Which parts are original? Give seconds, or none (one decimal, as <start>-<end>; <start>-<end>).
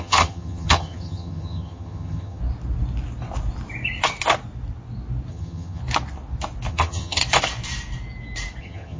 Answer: 2.4-5.3; 5.8-6.7; 7.2-8.6